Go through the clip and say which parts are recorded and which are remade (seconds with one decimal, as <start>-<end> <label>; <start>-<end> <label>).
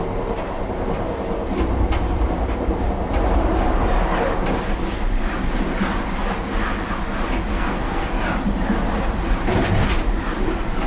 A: 0.0-7.5 recorded; 7.5-8.1 remade; 8.1-10.9 recorded